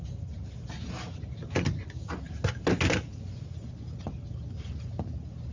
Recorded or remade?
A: recorded